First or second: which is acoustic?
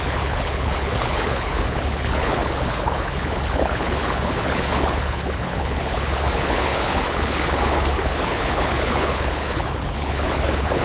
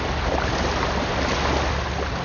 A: second